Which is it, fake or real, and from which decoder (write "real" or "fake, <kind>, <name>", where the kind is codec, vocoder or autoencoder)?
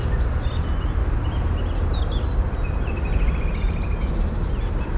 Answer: real